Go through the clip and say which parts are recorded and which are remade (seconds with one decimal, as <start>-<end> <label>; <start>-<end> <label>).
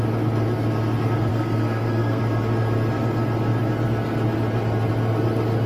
0.0-1.3 recorded; 1.3-2.2 remade; 2.2-5.7 recorded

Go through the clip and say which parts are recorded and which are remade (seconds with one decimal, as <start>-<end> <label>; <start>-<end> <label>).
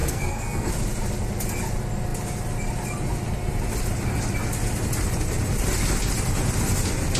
0.0-0.7 remade; 0.7-7.2 recorded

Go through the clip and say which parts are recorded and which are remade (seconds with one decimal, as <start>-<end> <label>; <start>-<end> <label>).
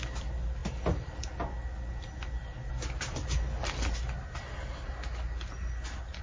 0.0-6.2 recorded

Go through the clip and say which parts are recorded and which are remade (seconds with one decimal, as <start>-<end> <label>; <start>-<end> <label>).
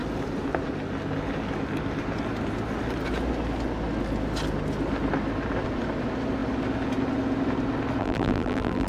0.0-8.0 recorded; 8.0-8.9 remade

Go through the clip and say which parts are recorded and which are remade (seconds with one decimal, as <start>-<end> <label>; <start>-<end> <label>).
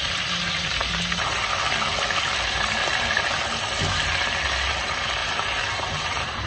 0.0-5.2 recorded; 5.2-6.5 remade